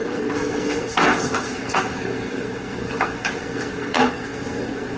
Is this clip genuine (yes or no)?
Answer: no